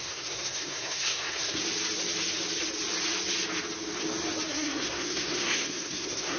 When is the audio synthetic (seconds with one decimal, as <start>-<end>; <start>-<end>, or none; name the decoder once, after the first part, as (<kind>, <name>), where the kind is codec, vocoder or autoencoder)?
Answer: 0.0-1.6 (codec, SNAC); 4.5-6.4